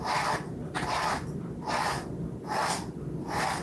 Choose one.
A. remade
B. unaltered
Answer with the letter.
B